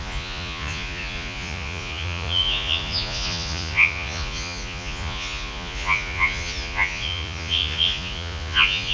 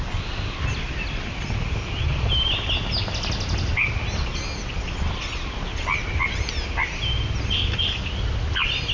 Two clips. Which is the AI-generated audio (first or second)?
first